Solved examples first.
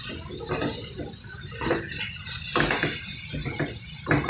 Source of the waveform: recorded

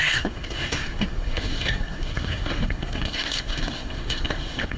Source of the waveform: remade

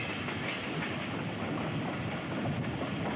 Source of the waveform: recorded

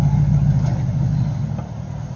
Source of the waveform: recorded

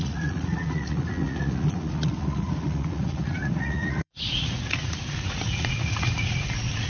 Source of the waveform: remade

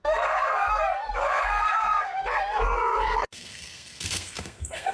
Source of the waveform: remade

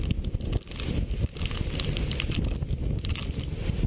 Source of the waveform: recorded